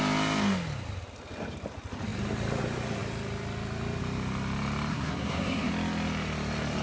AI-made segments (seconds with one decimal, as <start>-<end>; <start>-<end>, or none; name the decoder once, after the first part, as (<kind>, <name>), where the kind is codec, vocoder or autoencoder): 4.9-5.7 (codec, SNAC)